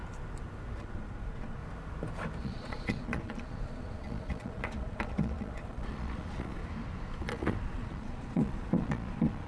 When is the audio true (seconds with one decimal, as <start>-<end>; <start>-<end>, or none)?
0.0-0.8; 1.6-2.4; 6.6-7.2